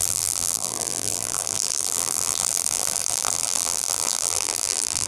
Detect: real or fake fake